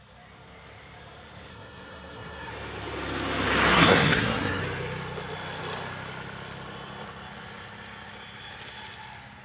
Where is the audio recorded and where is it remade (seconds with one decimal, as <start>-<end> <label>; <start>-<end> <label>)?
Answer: 0.0-1.5 recorded; 1.5-2.5 remade; 2.5-3.7 recorded; 3.7-4.6 remade; 4.6-9.4 recorded